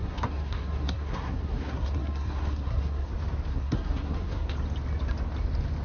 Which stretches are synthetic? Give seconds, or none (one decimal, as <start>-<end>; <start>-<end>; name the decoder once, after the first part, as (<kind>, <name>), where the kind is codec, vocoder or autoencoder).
0.0-3.1 (codec, SNAC); 3.5-4.5